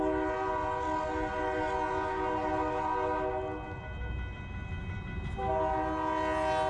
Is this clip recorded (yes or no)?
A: yes